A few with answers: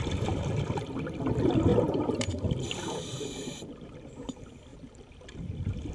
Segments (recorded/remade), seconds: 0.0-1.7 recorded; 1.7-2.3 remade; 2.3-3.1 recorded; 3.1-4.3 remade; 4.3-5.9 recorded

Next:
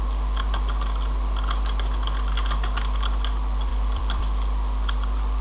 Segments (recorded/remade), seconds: 0.0-3.7 recorded; 3.7-4.2 remade; 4.2-5.4 recorded

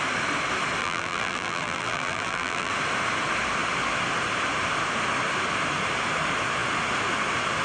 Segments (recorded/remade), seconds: 0.0-0.8 recorded; 0.8-2.7 remade; 2.7-7.6 recorded

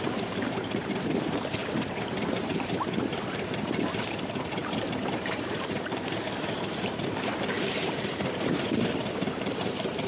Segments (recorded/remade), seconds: 0.0-1.6 remade; 1.6-2.4 recorded; 2.4-10.1 remade